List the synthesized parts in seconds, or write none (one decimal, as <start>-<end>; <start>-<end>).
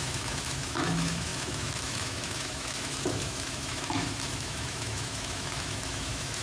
0.0-6.4